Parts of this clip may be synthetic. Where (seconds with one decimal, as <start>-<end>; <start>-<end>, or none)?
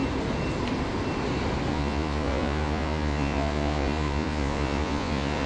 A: 1.7-5.5